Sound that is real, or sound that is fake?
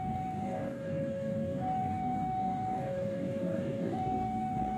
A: fake